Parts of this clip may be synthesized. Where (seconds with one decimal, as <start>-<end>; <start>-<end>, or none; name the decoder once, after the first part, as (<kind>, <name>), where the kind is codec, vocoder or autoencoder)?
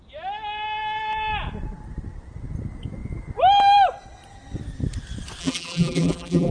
5.4-6.5 (vocoder, BigVGAN v2)